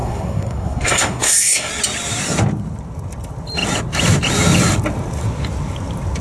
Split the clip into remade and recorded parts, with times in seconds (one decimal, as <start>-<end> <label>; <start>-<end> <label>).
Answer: 0.0-1.7 remade; 1.7-6.2 recorded

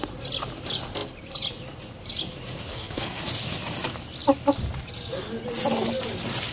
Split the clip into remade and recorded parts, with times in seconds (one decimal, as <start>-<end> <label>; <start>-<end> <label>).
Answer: 0.0-2.7 recorded; 2.7-3.2 remade; 3.2-6.5 recorded

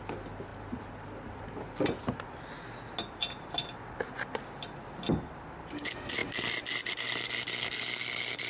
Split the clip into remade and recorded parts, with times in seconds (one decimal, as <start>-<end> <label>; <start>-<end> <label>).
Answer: 0.0-8.5 recorded

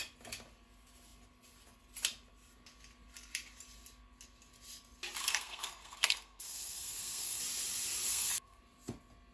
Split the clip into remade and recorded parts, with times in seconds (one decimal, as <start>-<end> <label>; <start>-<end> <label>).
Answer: 0.0-5.2 recorded; 5.2-7.4 remade; 7.4-8.1 recorded; 8.1-8.6 remade; 8.6-9.3 recorded

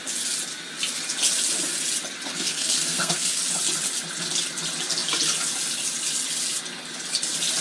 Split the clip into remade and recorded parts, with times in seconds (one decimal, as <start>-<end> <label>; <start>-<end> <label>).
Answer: 0.0-2.3 recorded; 2.3-3.4 remade; 3.4-7.6 recorded

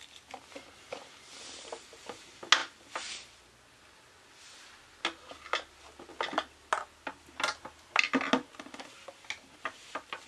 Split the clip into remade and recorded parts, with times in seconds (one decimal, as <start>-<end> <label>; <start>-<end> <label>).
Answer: 0.0-10.3 recorded